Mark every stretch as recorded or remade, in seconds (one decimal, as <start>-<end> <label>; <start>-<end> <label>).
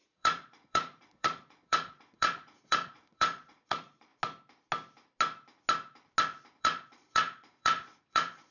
0.0-4.1 remade; 4.1-6.6 recorded; 6.6-8.5 remade